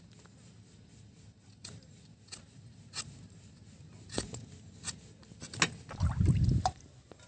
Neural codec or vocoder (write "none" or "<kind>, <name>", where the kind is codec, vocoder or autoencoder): none